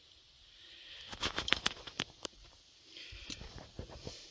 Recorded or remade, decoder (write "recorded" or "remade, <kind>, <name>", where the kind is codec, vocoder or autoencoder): recorded